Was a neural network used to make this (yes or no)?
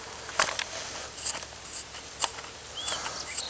no